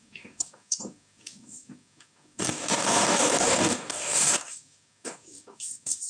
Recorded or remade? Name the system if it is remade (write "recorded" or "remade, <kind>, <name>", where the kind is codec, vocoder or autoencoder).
remade, codec, DAC